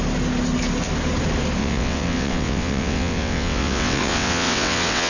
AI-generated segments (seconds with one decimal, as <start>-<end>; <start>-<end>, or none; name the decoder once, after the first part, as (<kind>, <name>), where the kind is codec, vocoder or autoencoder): 1.6-5.1 (vocoder, WaveNeXt)